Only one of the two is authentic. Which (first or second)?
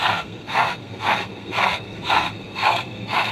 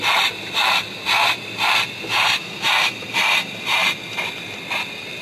second